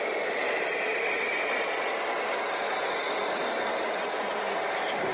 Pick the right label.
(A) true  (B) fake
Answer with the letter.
A